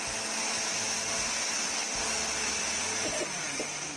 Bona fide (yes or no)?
yes